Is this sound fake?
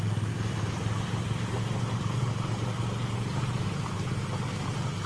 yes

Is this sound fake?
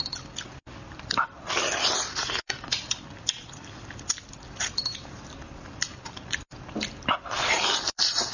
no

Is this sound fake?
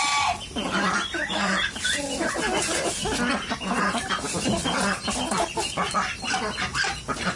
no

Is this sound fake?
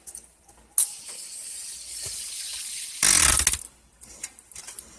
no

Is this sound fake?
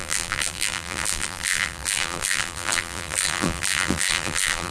yes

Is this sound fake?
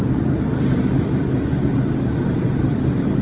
yes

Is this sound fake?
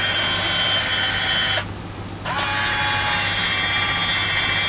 no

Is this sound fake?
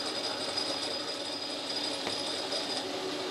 no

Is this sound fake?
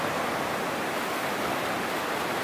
no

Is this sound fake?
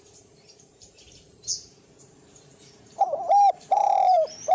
yes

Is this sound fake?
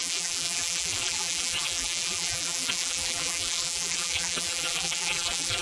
yes